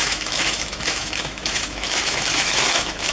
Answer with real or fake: fake